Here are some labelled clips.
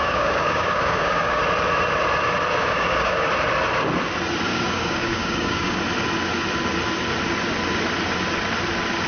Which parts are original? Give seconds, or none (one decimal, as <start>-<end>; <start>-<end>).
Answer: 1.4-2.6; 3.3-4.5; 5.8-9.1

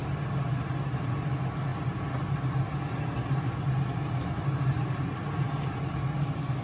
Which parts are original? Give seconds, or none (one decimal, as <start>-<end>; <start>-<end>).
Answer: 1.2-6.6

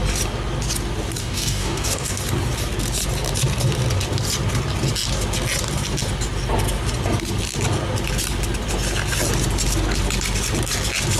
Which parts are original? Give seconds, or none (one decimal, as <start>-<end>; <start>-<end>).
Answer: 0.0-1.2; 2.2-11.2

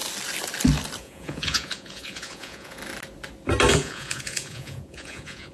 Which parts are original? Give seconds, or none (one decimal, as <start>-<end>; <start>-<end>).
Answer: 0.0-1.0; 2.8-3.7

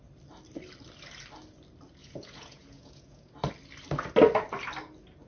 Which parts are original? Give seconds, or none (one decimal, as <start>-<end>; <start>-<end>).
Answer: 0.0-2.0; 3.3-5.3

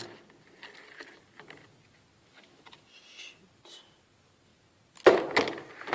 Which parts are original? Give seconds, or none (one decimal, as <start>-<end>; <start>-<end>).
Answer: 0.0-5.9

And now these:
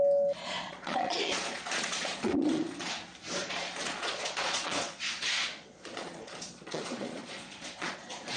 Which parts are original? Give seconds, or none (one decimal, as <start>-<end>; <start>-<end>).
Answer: 0.0-0.4; 2.9-3.4